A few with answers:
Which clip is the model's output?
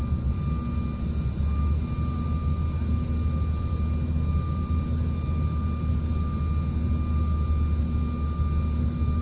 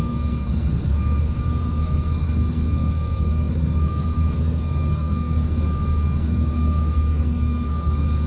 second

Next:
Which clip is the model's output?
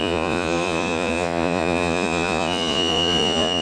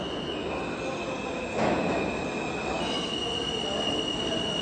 first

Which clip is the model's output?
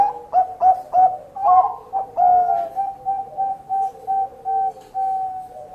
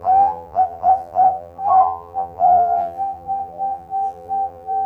second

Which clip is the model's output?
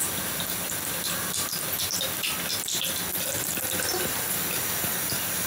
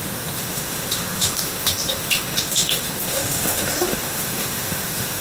second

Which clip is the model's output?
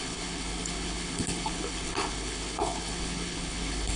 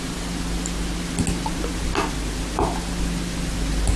first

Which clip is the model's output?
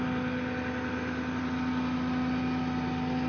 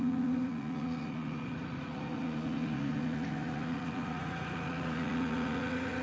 second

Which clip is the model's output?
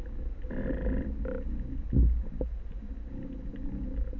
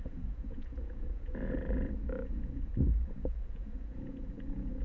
second